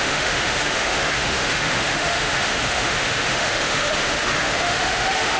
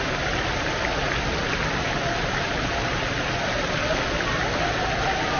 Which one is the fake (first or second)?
first